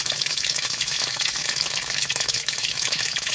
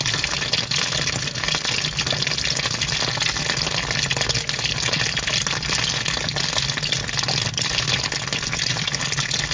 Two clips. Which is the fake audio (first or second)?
first